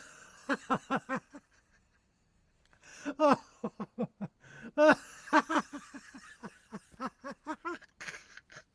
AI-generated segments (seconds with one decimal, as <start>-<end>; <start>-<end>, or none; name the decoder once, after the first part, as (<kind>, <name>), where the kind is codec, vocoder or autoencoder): none

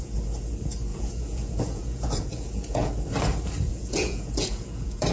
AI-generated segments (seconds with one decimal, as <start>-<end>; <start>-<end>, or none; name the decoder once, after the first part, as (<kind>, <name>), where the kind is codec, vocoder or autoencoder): 0.9-2.9 (vocoder, Vocos); 3.7-5.1

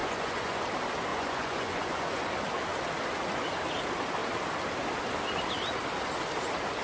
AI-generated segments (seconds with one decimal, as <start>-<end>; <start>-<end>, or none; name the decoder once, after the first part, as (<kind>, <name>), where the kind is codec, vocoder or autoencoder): 0.0-0.6 (vocoder, Vocos); 1.1-2.2

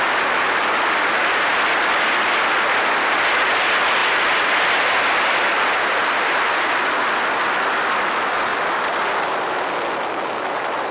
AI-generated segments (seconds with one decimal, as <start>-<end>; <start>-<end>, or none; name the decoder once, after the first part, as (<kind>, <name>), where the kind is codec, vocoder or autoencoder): none

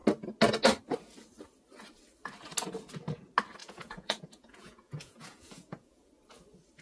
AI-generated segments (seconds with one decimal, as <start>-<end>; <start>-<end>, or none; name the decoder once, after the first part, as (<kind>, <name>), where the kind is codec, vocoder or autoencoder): 3.6-6.1 (vocoder, Vocos)